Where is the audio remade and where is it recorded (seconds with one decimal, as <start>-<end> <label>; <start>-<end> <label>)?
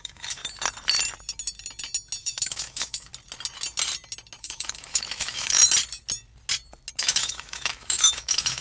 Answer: 0.0-0.4 remade; 0.4-2.2 recorded; 2.2-3.1 remade; 3.1-4.4 recorded; 4.4-5.6 remade; 5.6-7.0 recorded; 7.0-8.6 remade